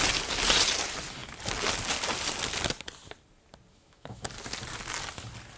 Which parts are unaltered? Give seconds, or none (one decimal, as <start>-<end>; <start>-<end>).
0.0-3.7; 4.3-5.6